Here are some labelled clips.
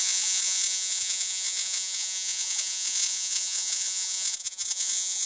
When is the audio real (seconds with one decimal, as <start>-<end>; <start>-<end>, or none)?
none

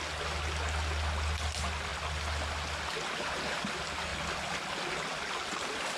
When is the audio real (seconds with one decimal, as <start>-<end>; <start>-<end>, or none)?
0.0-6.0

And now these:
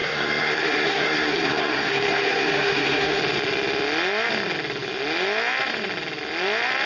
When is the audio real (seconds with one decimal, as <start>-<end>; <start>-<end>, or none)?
3.2-6.9

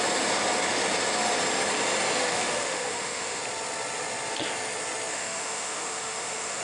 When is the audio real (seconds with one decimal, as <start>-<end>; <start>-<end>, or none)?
0.0-2.2; 3.4-5.1